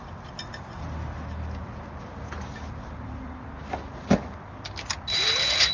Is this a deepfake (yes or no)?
no